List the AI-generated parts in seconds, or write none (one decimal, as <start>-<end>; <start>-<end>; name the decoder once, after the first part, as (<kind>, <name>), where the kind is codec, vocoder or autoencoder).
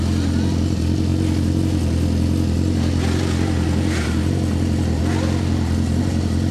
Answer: none